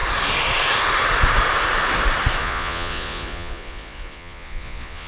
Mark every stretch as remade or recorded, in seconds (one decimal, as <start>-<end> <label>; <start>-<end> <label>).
0.0-2.4 recorded; 2.4-5.1 remade